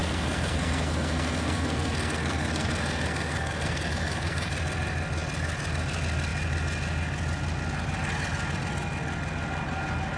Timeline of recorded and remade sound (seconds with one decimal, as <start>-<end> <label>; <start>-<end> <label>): 0.0-4.5 remade; 4.5-10.2 recorded